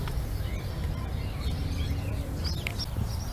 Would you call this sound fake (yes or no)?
no